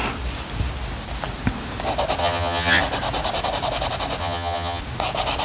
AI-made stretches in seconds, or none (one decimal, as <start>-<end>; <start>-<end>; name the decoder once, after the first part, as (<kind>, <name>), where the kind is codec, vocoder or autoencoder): 2.2-2.8 (vocoder, HiFi-GAN); 4.2-4.8